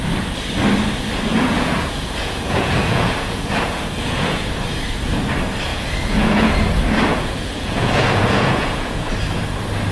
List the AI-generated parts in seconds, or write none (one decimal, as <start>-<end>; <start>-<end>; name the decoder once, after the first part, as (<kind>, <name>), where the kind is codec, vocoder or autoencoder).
1.3-4.6 (vocoder, Vocos); 5.7-6.5; 7.1-9.1